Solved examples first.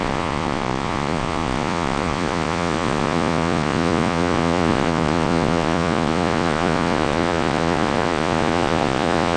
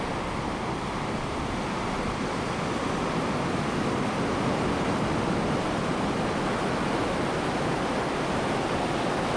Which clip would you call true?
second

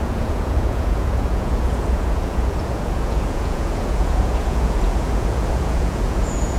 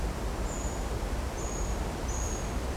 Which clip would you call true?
second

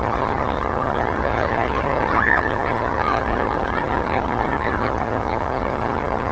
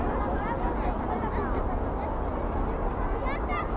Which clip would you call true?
second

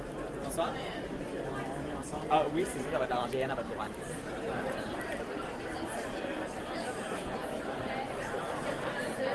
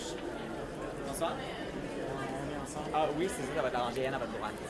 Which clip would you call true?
second